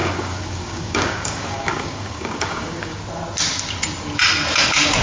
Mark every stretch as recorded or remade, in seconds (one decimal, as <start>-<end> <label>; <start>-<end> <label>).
0.0-3.0 remade; 3.0-5.0 recorded